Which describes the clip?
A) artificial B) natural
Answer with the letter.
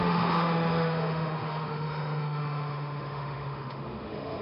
A